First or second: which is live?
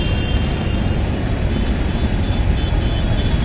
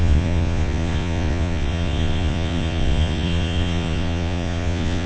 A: first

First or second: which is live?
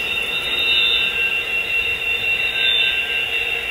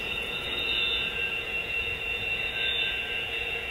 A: first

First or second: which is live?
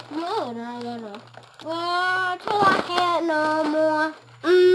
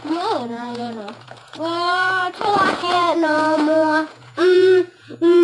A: first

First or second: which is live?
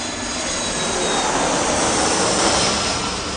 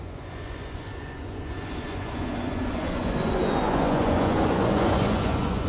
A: first